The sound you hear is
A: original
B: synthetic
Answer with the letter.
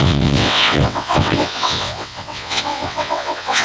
B